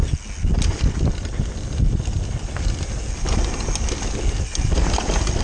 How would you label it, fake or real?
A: real